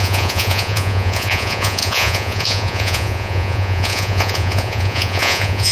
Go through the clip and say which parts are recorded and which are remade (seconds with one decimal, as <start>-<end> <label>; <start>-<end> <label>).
0.0-5.7 remade